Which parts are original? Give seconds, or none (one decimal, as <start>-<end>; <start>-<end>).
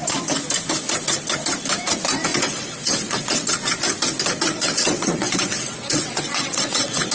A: 0.0-2.3; 3.5-4.5